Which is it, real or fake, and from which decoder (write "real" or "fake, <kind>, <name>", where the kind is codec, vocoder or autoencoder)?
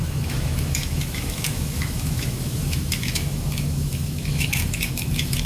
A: fake, autoencoder, DAC-VAE